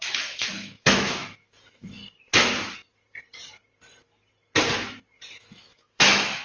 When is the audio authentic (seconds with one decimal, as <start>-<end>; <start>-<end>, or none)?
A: 2.0-5.4